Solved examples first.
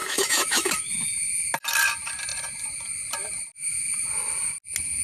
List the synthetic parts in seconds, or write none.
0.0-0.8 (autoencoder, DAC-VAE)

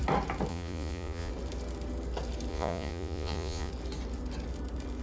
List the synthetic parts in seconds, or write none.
0.5-1.3 (vocoder, Vocos); 2.5-3.7

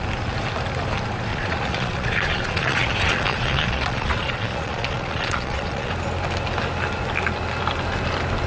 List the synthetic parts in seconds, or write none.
1.3-5.9 (vocoder, Vocos)

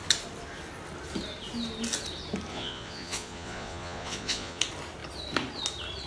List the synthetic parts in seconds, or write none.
2.5-4.6 (vocoder, Vocos)